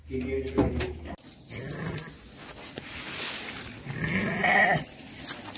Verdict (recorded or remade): recorded